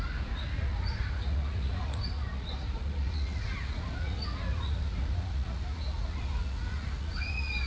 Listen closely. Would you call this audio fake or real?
fake